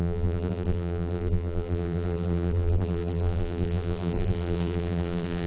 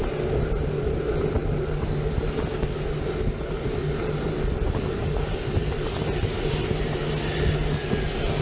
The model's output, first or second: first